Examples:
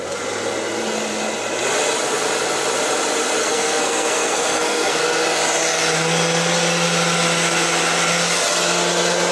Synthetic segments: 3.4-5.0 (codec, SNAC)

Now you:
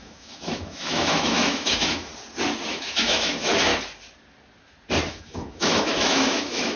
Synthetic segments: 0.0-2.1 (autoencoder, DAC-VAE); 2.7-3.7; 5.1-6.8

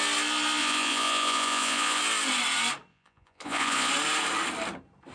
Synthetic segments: 0.6-2.0 (vocoder, Vocos); 2.9-3.9

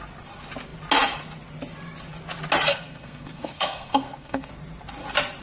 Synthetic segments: 2.7-4.5 (codec, SNAC)

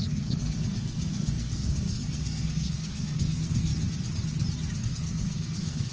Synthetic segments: 0.0-3.7 (codec, SNAC); 4.8-5.9

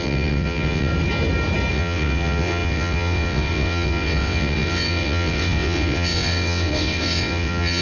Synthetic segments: 0.0-0.9 (vocoder, WaveNeXt); 1.7-7.8

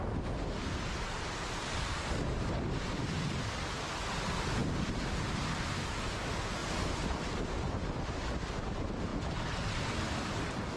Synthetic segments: 6.6-7.4 (vocoder, BigVGAN v2)